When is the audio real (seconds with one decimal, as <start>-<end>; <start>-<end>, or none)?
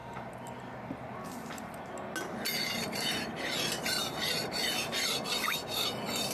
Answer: 0.0-6.3